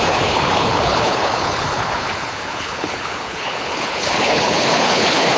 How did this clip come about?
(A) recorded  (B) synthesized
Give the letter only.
B